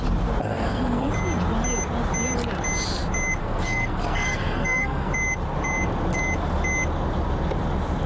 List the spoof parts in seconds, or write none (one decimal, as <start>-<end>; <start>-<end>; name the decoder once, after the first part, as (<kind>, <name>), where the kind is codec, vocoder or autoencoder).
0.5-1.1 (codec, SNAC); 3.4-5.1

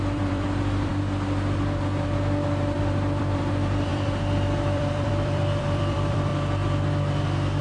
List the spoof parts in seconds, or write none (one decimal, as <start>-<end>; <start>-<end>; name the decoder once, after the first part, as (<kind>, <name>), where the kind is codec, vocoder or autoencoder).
0.0-0.9 (vocoder, BigVGAN v2); 2.8-6.3

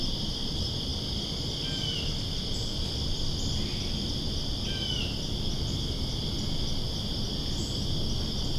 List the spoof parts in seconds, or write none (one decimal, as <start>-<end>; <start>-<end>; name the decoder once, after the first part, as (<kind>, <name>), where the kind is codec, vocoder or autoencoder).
none

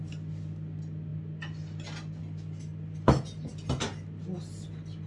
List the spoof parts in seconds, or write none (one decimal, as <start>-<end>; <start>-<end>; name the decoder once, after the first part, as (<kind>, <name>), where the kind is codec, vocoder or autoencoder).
none

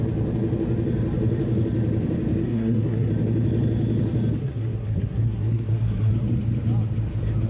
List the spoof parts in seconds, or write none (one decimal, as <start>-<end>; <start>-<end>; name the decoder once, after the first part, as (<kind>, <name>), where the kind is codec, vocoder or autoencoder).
2.4-3.1 (codec, SNAC); 4.4-6.1

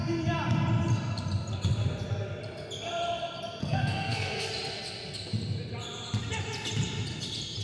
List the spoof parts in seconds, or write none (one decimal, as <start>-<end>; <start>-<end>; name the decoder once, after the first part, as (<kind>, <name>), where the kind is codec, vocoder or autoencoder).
3.6-4.5 (codec, SNAC)

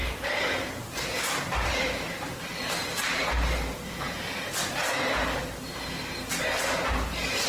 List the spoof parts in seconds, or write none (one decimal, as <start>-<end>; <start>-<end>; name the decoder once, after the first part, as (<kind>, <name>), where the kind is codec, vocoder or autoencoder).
0.0-2.4 (vocoder, BigVGAN v2)

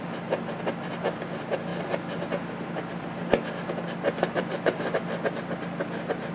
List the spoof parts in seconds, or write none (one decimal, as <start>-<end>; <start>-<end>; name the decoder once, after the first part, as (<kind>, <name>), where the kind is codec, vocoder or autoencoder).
none